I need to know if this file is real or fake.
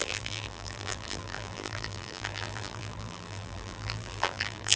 fake